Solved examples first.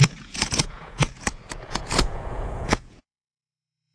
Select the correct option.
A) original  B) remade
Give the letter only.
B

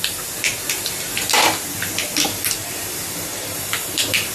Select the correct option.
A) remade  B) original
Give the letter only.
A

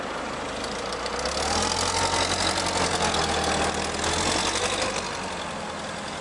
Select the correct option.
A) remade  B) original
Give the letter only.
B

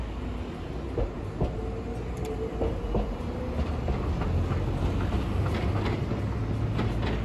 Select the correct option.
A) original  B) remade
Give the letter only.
A